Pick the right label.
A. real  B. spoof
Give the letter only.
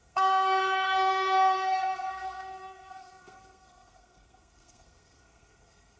B